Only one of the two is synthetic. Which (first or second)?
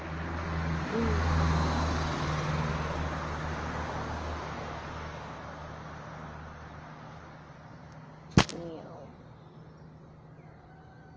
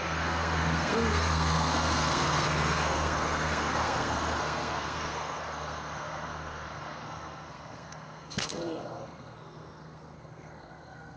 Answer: second